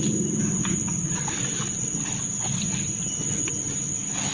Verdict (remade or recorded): recorded